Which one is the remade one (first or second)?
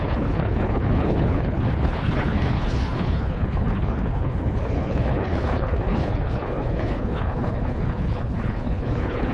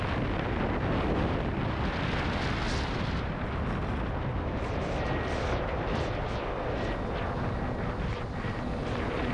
first